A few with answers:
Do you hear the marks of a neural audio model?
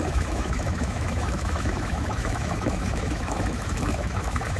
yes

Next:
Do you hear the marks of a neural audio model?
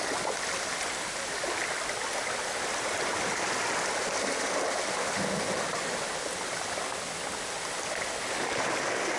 no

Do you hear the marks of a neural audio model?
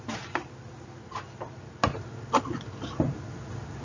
no